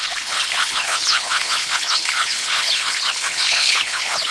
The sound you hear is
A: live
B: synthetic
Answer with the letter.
B